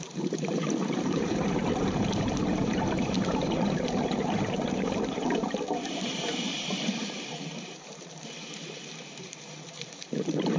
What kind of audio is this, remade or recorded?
remade